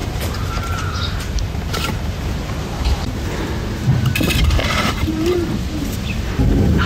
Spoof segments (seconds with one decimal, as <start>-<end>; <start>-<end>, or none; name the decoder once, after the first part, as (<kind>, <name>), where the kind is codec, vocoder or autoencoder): 0.0-4.1 (vocoder, BigVGAN v2); 4.6-5.7